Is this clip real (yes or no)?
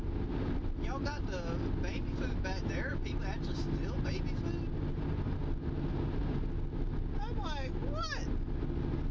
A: yes